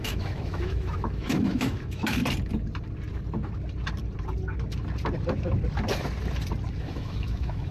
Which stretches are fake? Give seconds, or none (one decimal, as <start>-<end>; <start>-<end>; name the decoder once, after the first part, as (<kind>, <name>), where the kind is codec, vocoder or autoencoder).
0.0-2.2 (autoencoder, DAC-VAE); 6.8-7.7